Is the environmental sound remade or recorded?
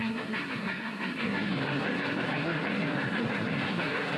remade